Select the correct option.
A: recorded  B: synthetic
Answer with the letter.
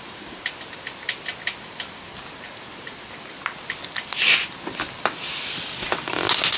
A